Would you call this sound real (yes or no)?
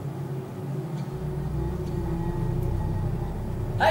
yes